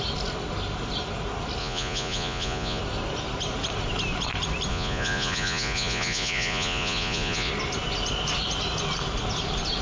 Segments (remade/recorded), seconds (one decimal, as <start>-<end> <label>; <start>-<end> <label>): 0.0-1.6 recorded; 1.6-2.8 remade; 2.8-4.7 recorded; 4.7-7.5 remade; 7.5-9.8 recorded